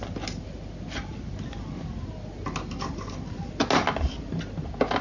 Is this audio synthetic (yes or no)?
no